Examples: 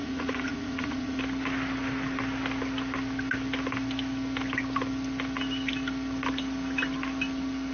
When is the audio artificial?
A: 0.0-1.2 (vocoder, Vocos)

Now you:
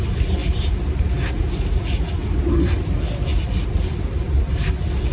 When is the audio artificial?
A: none

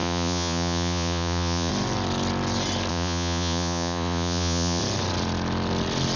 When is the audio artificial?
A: 0.0-1.7 (vocoder, Vocos); 2.9-4.8

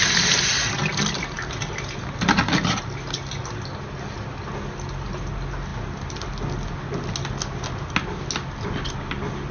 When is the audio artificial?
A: none

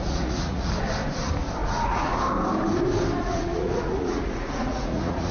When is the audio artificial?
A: 0.0-0.7 (vocoder, Vocos); 1.6-2.2; 3.2-5.3

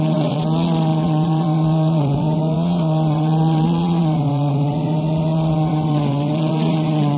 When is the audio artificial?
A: 0.0-7.2 (vocoder, Vocos)

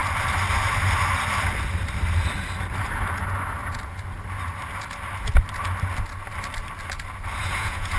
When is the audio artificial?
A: 7.4-8.0 (vocoder, Vocos)

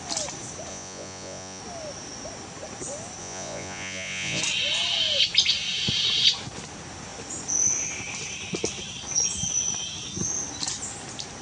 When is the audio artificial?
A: 0.7-1.6 (vocoder, Vocos); 3.2-4.4